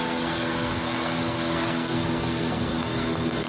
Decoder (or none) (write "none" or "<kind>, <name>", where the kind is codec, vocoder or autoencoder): codec, SNAC